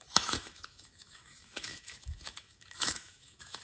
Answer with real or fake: fake